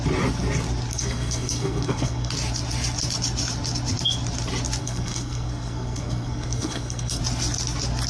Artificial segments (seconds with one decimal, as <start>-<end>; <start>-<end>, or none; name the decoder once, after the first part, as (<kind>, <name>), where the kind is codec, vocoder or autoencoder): 0.9-2.3 (codec, SNAC); 4.8-7.2